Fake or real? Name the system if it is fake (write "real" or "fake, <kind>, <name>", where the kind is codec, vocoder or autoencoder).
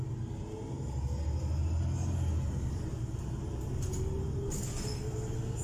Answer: real